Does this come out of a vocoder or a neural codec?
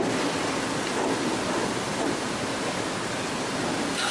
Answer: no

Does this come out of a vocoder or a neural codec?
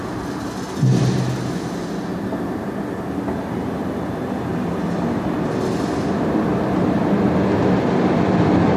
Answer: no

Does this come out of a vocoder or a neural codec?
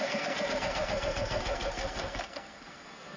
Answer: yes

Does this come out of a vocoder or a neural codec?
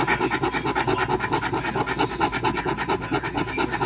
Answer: no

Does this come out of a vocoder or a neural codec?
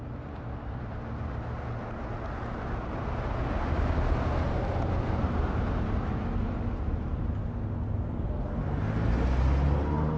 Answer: no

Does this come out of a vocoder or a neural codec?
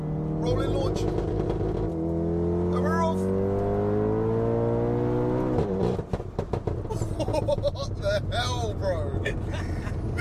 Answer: no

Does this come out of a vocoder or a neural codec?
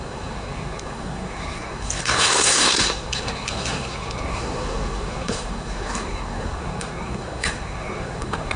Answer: yes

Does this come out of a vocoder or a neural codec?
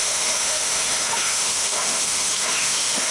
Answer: yes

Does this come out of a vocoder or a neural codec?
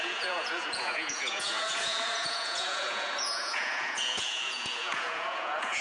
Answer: yes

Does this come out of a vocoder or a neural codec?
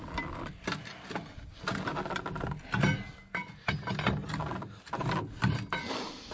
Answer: no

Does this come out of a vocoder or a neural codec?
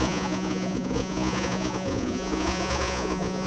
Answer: yes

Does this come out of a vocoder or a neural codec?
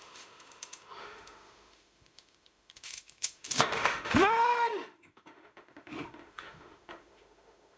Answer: yes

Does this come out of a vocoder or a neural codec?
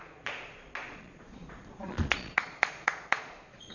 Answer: yes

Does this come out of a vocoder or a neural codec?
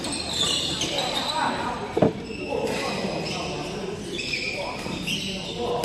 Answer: no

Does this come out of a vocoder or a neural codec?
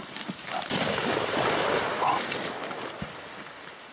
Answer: no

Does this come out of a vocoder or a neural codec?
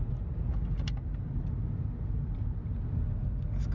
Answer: no